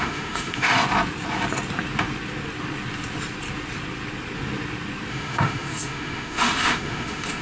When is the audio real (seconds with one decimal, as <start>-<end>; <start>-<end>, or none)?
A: 0.7-5.1